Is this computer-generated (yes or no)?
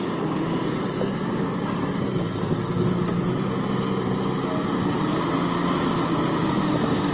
no